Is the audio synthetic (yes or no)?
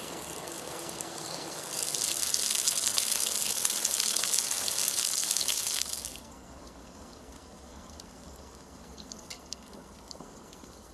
yes